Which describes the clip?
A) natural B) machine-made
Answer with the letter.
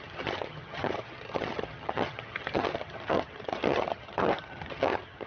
B